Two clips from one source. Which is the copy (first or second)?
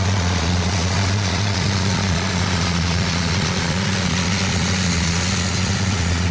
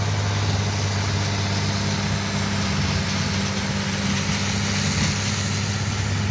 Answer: first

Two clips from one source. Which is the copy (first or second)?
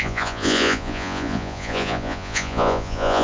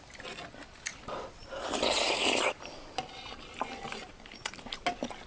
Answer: first